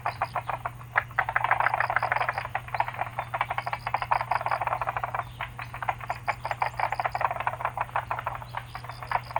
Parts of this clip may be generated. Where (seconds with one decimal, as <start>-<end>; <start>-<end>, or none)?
none